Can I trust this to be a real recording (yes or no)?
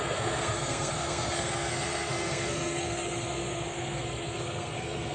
no